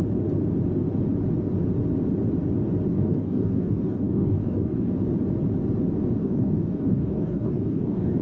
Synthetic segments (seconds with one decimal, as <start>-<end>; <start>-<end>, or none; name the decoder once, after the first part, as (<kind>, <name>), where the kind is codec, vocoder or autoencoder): 2.9-4.9 (codec, DAC); 6.2-8.2